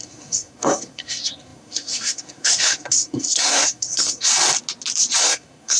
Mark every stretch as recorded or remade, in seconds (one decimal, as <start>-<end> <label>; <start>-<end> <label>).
0.0-4.3 remade; 4.3-5.2 recorded; 5.2-5.8 remade